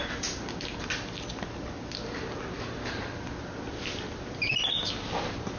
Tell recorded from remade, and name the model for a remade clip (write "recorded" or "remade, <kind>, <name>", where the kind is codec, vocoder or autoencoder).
recorded